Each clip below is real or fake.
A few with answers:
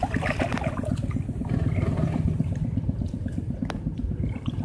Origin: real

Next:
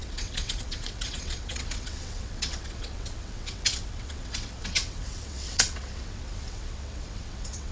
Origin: fake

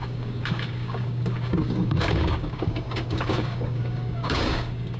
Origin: fake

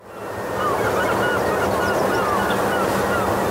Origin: real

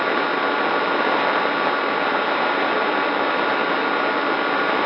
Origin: real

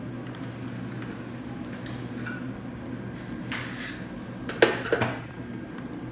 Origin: real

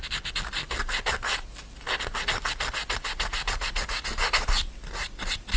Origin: real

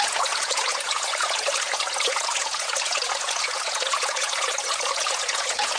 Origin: fake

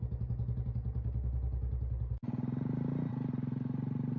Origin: real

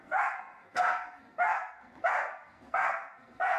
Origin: fake